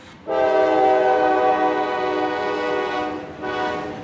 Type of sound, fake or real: real